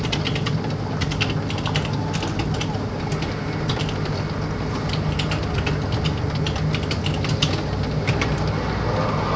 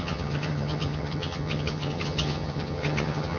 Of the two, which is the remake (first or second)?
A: second